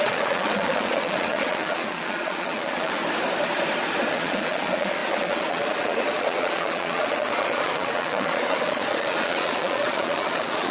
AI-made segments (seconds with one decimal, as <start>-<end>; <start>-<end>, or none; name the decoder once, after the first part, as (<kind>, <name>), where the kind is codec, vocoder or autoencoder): 0.0-3.0 (vocoder, Vocos); 4.0-10.7